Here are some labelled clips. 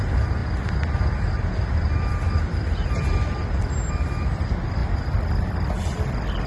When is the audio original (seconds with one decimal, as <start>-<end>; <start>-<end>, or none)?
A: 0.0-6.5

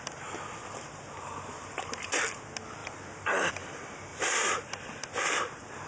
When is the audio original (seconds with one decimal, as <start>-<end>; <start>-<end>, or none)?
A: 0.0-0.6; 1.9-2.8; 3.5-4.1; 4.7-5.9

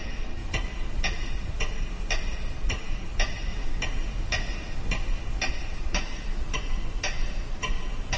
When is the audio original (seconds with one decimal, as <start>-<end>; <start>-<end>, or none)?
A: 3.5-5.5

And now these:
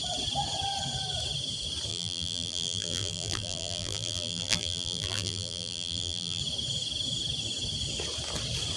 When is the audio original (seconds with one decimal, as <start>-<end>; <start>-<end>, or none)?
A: 0.0-1.9; 6.4-8.8

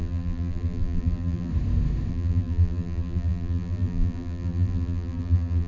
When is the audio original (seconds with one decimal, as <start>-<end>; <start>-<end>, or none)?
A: 1.5-2.1

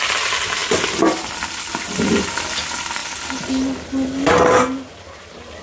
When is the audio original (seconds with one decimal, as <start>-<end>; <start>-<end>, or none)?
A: 0.0-0.6; 1.7-5.6

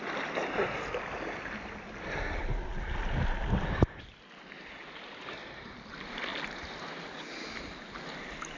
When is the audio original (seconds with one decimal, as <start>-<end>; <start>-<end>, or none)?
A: 0.0-8.6

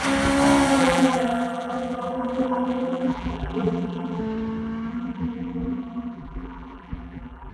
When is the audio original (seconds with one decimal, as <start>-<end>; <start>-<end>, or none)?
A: 0.0-0.8; 4.2-4.9